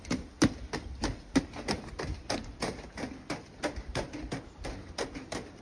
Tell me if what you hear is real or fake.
real